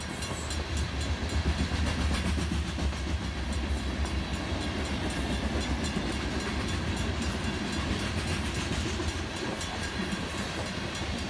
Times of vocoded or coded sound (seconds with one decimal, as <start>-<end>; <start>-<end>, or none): none